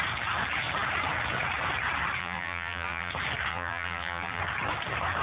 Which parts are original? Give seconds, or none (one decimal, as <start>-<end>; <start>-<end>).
0.0-2.2; 3.1-3.5; 4.4-5.2